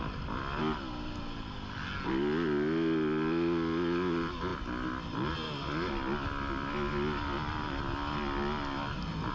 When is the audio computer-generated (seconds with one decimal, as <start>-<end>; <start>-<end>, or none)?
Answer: none